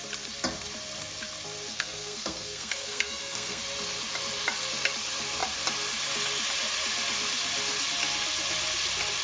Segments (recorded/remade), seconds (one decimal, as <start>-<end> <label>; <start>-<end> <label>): 0.0-1.7 recorded; 1.7-3.6 remade; 3.6-9.2 recorded